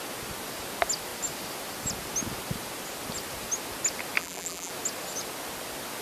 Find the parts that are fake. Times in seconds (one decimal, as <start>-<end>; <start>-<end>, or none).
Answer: 4.2-4.7